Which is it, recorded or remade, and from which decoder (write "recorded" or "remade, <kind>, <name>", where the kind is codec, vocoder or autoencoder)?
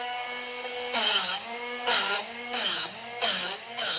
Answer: remade, codec, DAC